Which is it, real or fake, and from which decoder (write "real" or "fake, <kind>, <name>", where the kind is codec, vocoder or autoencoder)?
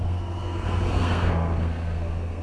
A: fake, codec, SNAC